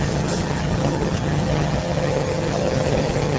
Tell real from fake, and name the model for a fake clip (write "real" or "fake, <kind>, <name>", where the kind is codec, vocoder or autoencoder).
fake, vocoder, HiFi-GAN